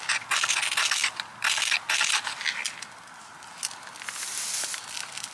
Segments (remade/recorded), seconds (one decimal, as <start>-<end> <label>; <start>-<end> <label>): 0.0-5.3 recorded